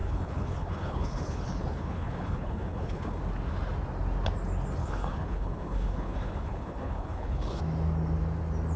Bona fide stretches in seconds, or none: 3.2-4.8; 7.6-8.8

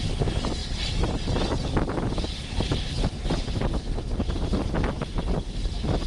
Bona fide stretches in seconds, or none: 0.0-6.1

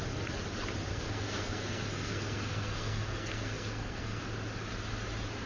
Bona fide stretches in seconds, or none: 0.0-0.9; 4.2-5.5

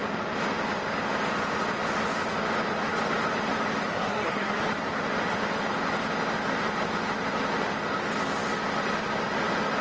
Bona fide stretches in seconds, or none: 0.0-3.9; 4.6-9.8